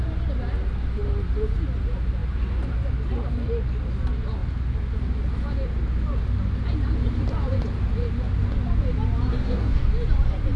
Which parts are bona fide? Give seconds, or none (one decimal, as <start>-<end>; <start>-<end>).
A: 0.0-9.3; 9.9-10.6